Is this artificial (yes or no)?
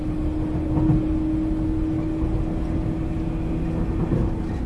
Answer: no